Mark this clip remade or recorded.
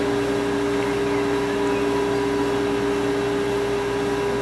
recorded